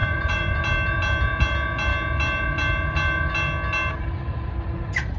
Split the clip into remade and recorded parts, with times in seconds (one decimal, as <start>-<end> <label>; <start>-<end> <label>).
0.0-0.6 remade; 0.6-5.2 recorded